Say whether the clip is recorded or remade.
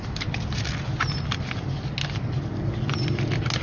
recorded